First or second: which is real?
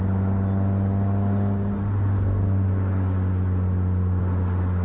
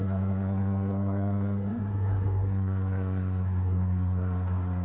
first